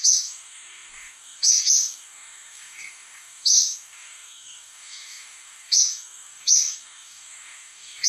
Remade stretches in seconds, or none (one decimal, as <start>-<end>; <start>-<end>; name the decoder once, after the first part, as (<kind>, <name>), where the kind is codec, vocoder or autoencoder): 0.0-8.1 (codec, DAC)